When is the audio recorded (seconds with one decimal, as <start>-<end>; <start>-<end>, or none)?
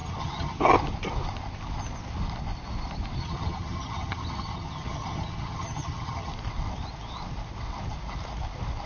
0.6-3.2; 6.3-8.9